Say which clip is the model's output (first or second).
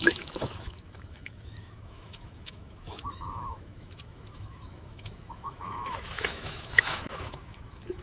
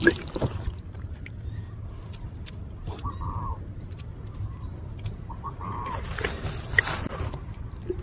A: first